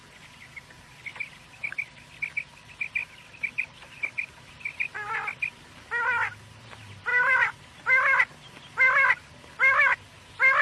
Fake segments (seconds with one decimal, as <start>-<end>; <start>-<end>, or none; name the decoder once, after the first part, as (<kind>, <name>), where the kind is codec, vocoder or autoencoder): 3.0-4.5 (vocoder, BigVGAN v2); 7.1-7.6